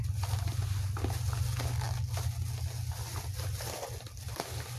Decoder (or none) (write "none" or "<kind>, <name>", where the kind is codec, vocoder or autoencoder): none